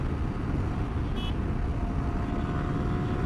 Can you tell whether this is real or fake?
real